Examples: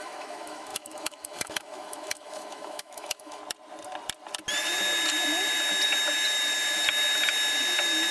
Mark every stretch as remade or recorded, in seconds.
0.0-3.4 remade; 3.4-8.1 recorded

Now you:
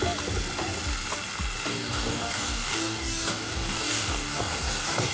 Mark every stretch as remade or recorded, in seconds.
0.0-1.7 recorded; 1.7-5.1 remade

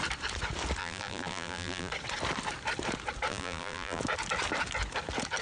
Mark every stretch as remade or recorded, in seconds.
0.0-0.8 recorded; 0.8-1.9 remade; 1.9-3.3 recorded; 3.3-4.0 remade; 4.0-5.4 recorded